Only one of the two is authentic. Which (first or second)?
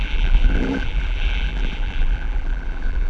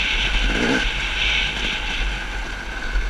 second